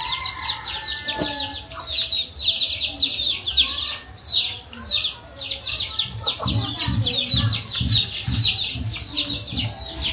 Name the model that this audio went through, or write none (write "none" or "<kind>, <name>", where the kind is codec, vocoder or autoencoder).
none